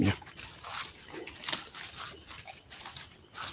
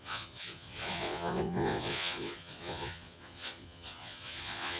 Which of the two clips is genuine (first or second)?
first